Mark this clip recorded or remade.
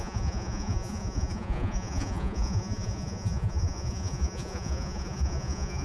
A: remade